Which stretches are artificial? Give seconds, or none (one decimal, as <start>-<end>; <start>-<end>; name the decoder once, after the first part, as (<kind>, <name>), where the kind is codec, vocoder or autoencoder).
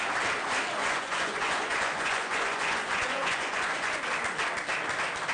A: 0.8-4.0 (vocoder, Vocos)